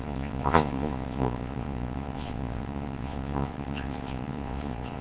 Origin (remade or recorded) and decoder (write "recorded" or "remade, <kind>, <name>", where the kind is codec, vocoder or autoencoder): remade, vocoder, Vocos